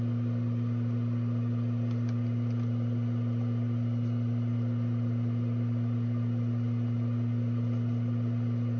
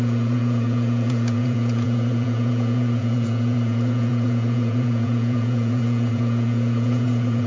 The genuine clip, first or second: first